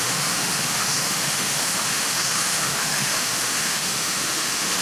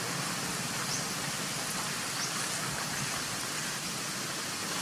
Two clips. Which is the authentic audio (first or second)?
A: second